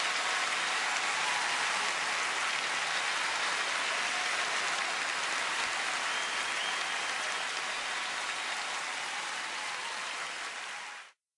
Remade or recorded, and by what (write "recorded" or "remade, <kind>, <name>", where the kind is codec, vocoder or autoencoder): recorded